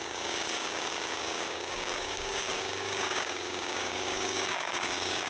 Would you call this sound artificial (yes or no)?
yes